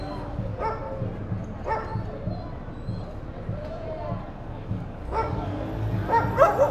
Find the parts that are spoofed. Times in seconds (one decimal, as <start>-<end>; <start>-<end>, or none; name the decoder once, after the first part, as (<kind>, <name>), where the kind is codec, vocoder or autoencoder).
0.0-0.5 (codec, DAC); 4.2-6.0